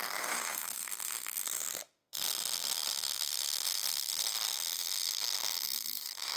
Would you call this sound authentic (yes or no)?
no